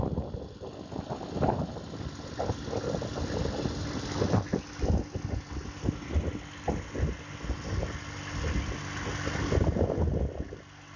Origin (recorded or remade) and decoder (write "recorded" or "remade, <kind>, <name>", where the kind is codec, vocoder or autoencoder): recorded